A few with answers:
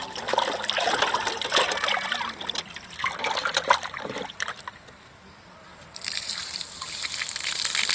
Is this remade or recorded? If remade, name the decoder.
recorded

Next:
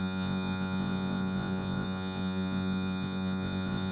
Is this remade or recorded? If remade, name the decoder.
remade, vocoder, Vocos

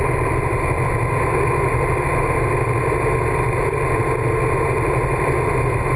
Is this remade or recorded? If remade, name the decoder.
recorded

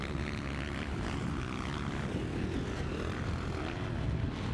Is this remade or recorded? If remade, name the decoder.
recorded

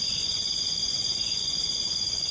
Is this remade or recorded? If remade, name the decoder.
remade, vocoder, Vocos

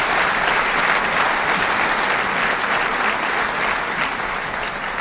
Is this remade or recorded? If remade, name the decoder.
recorded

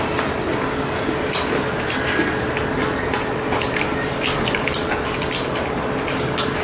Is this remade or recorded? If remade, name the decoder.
recorded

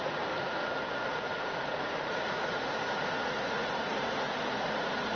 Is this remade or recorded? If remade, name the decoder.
remade, vocoder, Vocos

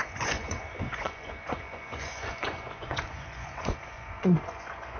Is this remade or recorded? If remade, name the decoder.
remade, vocoder, Vocos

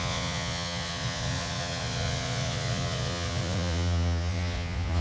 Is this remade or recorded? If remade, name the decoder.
remade, vocoder, Vocos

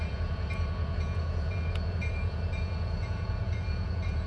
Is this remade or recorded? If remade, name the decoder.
remade, vocoder, Vocos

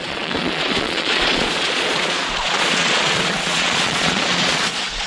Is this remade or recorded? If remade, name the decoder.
remade, vocoder, Vocos